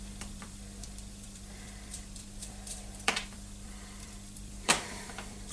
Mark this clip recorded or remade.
remade